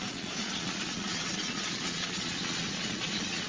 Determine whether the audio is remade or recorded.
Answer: remade